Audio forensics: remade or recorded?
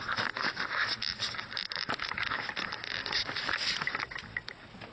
recorded